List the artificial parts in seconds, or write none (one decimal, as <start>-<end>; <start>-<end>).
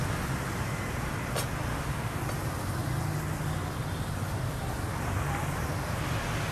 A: 1.7-2.2